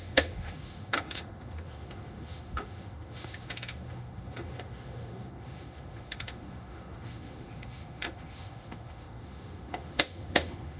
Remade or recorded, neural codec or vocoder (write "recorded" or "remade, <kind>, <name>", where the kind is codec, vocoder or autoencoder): remade, autoencoder, DAC-VAE